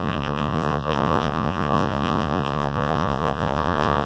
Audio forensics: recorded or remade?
remade